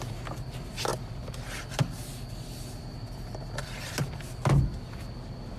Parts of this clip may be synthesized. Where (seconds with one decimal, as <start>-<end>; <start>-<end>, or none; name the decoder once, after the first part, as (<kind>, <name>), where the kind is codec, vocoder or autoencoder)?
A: none